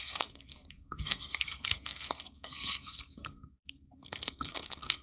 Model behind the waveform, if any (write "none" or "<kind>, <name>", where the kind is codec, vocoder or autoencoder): codec, SNAC